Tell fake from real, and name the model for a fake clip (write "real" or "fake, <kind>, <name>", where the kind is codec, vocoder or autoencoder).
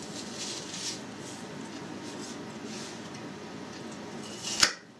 fake, vocoder, Vocos